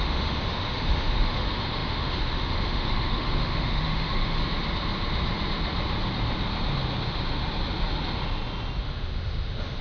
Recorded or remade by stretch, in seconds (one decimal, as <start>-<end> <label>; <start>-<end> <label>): 0.0-4.4 remade; 4.4-8.8 recorded; 8.8-9.8 remade